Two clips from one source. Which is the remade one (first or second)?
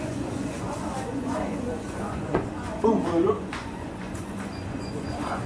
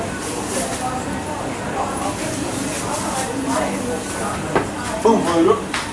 first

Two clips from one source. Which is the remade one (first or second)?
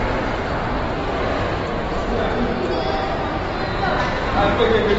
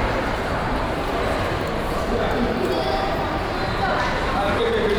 second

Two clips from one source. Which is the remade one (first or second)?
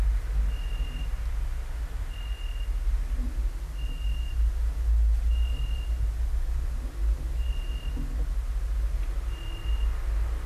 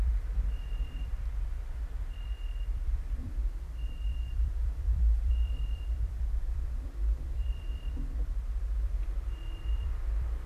second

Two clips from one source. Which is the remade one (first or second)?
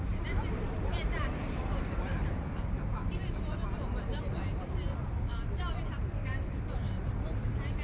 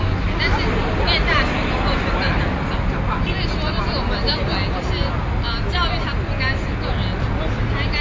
first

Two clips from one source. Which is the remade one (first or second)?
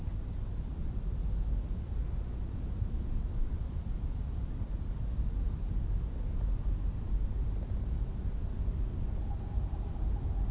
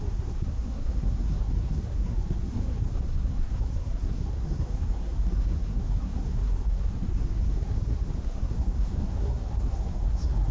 second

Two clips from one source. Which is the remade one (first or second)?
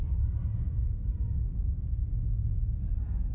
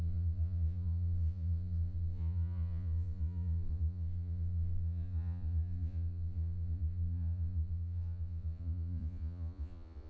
second